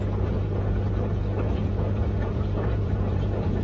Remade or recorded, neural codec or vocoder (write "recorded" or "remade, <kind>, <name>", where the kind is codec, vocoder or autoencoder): remade, vocoder, Vocos